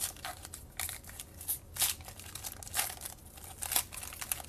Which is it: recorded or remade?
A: recorded